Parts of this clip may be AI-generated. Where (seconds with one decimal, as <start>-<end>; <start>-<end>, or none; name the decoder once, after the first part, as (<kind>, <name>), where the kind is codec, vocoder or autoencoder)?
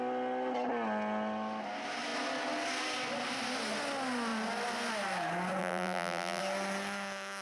5.6-6.4 (vocoder, BigVGAN v2)